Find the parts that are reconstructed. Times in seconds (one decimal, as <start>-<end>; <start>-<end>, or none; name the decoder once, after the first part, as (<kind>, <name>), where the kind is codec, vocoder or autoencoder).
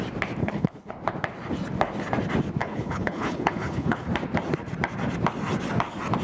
0.4-0.9 (codec, HILCodec); 2.6-4.1